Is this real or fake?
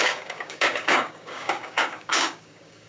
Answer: fake